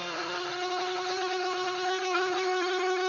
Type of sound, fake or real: fake